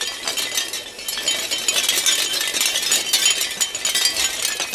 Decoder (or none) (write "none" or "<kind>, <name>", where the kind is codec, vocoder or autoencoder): none